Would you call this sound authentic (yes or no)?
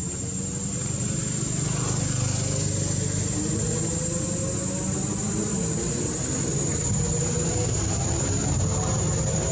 yes